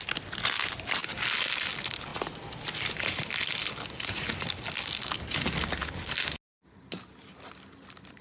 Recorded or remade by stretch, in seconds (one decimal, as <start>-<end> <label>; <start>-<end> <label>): 0.0-8.2 recorded